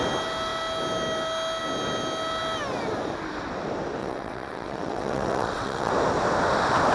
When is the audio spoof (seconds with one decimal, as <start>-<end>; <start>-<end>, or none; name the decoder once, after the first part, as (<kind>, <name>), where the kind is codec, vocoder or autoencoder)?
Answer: 4.0-5.9 (vocoder, WaveNeXt)